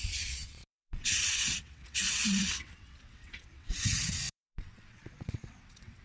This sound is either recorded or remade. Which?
remade